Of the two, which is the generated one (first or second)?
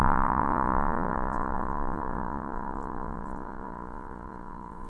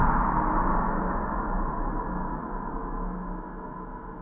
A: first